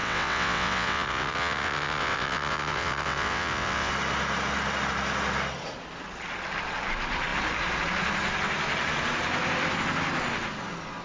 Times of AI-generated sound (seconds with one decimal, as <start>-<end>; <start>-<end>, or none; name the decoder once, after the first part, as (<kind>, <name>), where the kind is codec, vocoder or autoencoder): 0.0-3.9 (vocoder, WaveNeXt)